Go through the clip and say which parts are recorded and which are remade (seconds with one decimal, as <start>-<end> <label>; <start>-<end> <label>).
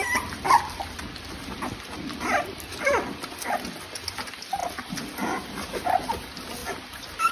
0.0-7.3 recorded